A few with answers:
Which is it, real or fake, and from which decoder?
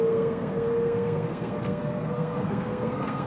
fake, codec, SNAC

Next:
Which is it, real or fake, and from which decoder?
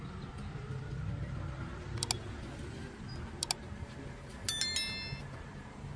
real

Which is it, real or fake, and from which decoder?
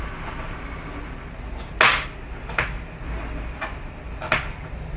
real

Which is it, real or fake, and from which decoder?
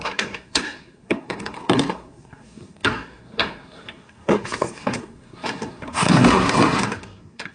fake, codec, SNAC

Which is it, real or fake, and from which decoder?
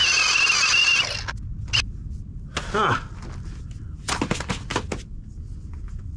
real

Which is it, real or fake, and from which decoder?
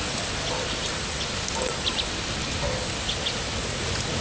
real